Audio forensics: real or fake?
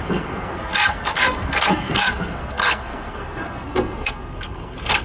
fake